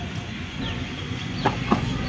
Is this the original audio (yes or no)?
no